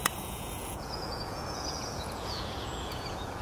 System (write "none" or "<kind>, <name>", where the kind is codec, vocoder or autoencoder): vocoder, Vocos